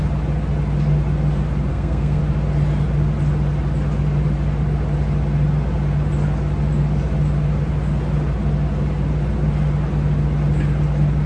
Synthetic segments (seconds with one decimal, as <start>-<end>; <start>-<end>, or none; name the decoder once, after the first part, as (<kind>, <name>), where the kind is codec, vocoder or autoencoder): 1.7-2.2 (codec, SNAC)